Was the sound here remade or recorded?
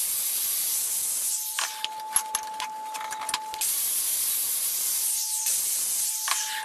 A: recorded